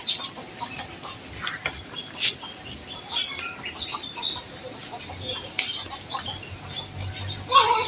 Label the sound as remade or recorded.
recorded